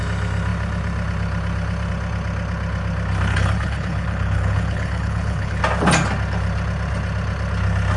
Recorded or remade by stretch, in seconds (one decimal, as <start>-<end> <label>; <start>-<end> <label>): 0.0-3.3 recorded; 3.3-5.6 remade; 5.6-8.0 recorded